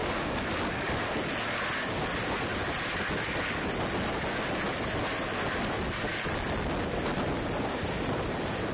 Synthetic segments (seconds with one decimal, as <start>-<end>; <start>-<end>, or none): 0.0-1.0